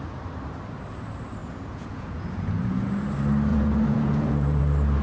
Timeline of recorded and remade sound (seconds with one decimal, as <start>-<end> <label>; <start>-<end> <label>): 0.0-1.4 recorded; 1.4-2.8 remade; 2.8-3.5 recorded; 3.5-4.6 remade; 4.6-5.0 recorded